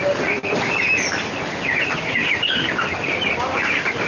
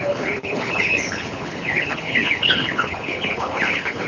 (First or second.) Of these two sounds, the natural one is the first